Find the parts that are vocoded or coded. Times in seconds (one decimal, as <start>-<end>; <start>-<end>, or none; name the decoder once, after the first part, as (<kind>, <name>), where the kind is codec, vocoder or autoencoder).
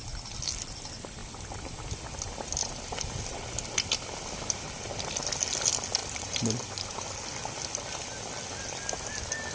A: 6.0-7.1 (vocoder, BigVGAN v2)